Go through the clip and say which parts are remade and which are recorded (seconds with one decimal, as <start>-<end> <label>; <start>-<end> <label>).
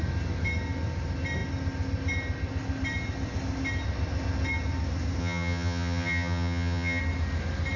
0.0-5.2 recorded; 5.2-7.0 remade; 7.0-7.8 recorded